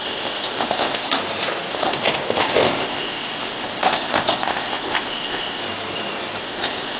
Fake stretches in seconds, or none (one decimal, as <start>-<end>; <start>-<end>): 0.0-1.1; 1.7-5.6; 6.4-7.0